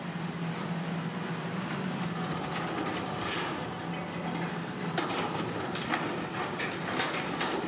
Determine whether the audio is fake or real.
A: real